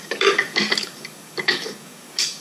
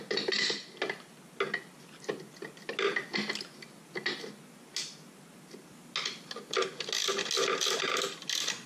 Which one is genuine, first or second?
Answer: second